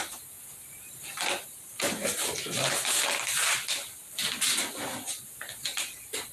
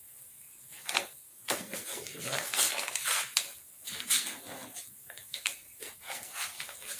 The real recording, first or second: first